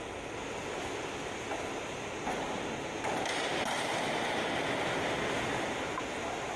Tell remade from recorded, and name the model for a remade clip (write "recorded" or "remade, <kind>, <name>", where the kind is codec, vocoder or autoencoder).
recorded